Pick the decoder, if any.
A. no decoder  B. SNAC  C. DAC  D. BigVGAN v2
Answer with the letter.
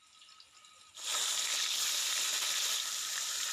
A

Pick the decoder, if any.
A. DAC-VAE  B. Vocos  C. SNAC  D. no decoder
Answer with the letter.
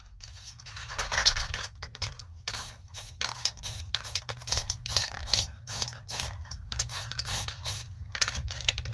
C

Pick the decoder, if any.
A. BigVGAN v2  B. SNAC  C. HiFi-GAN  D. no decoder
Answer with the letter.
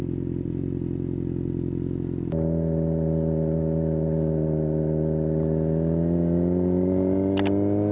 D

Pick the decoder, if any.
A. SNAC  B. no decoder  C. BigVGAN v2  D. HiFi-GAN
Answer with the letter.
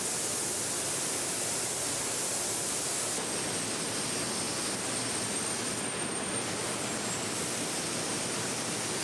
B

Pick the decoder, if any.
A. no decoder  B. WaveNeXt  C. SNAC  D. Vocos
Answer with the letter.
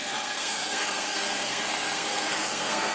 C